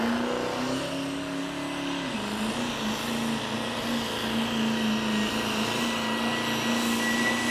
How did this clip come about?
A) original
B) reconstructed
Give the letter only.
A